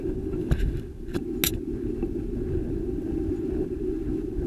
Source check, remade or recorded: recorded